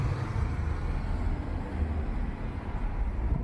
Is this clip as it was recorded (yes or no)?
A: yes